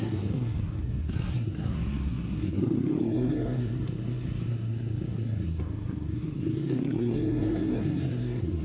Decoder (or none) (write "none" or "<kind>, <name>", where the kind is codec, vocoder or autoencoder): codec, SNAC